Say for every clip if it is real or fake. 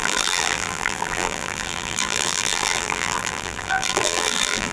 fake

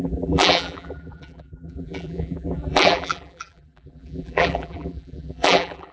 fake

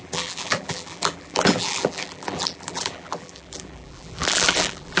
fake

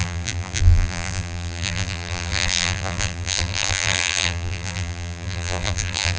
fake